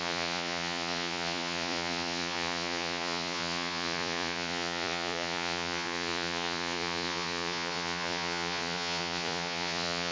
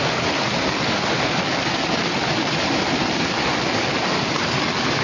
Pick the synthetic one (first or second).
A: first